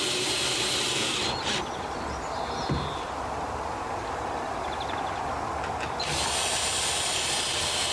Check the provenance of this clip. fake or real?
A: real